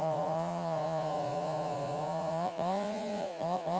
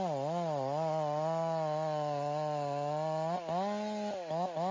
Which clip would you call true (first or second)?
second